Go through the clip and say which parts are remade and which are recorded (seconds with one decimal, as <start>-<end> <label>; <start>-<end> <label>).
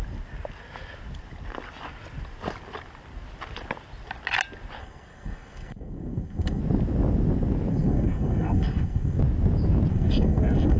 0.0-4.8 recorded; 4.8-6.6 remade; 6.6-7.7 recorded; 7.7-9.2 remade; 9.2-9.9 recorded; 9.9-10.8 remade